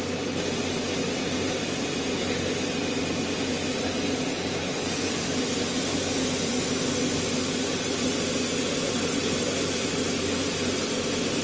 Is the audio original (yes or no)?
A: yes